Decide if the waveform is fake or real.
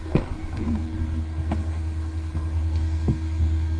fake